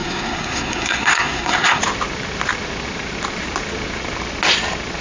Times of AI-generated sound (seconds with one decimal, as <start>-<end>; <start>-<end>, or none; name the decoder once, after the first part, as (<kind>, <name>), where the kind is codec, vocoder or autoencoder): 0.0-1.8 (codec, SNAC)